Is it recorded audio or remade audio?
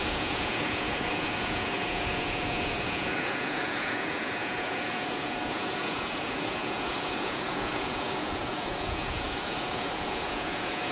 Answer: remade